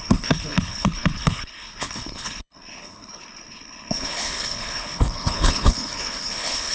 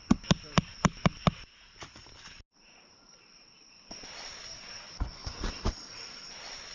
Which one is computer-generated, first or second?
first